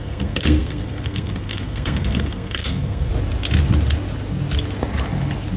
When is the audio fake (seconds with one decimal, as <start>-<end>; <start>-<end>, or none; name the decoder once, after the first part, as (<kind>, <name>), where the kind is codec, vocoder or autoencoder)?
0.0-3.1 (codec, SNAC)